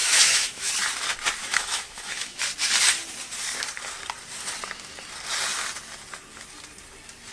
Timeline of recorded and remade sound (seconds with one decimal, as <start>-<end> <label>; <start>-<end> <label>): 0.0-0.7 remade; 0.7-1.4 recorded; 1.4-2.4 remade; 2.4-7.3 recorded